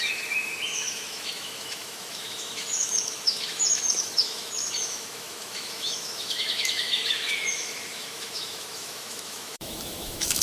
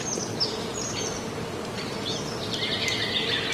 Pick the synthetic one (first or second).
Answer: first